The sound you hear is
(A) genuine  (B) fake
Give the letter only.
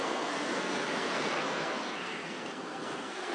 B